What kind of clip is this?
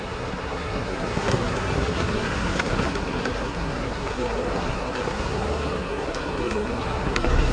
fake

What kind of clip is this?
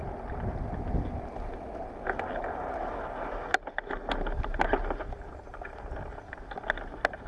real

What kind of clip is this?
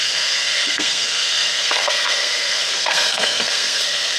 fake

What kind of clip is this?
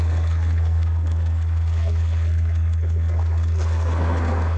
fake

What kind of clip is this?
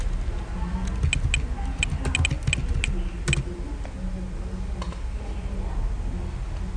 real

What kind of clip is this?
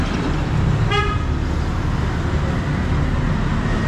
real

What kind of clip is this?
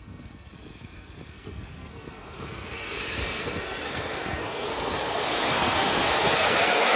fake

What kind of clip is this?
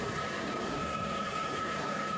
fake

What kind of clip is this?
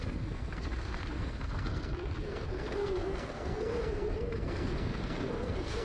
fake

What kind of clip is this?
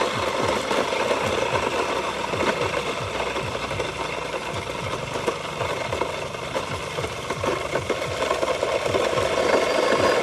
real